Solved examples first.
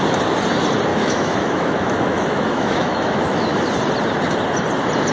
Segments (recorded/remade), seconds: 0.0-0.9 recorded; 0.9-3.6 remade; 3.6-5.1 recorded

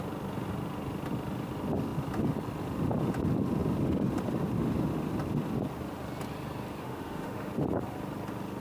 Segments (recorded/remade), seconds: 0.0-6.8 recorded; 6.8-7.5 remade; 7.5-8.6 recorded